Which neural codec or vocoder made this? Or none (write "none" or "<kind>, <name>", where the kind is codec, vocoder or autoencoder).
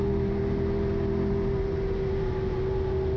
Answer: none